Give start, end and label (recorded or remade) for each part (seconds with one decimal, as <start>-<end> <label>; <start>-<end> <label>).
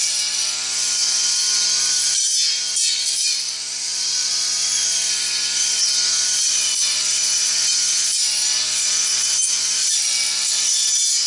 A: 0.0-3.2 recorded; 3.2-4.3 remade; 4.3-9.8 recorded; 9.8-10.7 remade; 10.7-11.3 recorded